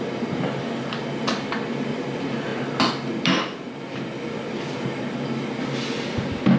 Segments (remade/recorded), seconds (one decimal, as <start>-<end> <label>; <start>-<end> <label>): 0.0-6.6 recorded